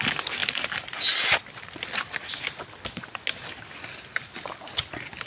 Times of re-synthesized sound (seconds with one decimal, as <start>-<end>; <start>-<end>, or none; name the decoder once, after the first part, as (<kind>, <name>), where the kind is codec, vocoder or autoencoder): none